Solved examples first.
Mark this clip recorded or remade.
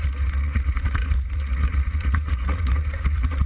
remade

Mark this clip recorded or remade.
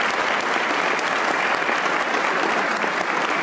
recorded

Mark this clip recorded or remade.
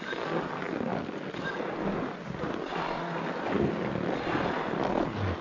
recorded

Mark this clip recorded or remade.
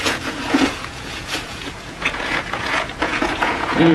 remade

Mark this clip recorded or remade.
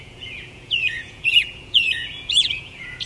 remade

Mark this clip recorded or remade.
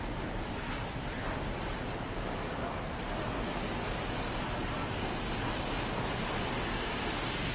recorded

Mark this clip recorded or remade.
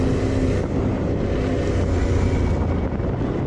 recorded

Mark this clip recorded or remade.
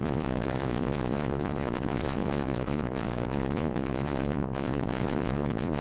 remade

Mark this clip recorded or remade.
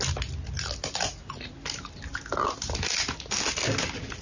recorded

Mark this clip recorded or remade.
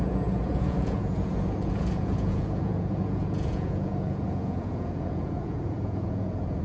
remade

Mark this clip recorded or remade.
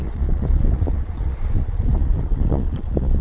remade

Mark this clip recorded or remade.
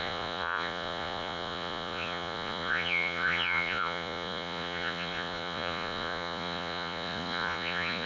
remade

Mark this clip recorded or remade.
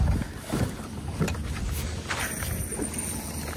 recorded